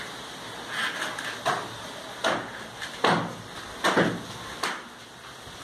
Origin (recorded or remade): recorded